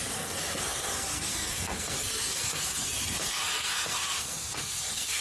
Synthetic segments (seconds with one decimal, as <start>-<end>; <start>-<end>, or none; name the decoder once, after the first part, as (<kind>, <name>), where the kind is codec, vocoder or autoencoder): 0.0-5.2 (codec, SNAC)